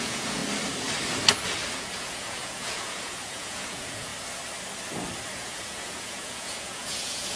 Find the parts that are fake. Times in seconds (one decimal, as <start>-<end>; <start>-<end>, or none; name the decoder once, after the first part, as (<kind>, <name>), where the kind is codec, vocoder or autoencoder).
0.0-0.4 (vocoder, Vocos); 1.7-4.1; 5.3-7.4